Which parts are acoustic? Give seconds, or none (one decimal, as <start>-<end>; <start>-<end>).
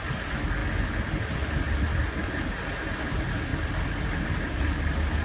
0.0-5.2